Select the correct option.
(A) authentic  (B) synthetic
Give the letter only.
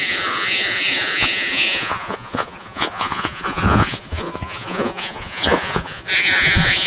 B